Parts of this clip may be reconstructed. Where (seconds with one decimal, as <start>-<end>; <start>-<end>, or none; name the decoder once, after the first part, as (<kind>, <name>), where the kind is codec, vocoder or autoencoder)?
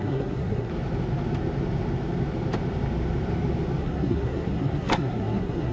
0.0-0.7 (codec, SNAC); 3.8-5.7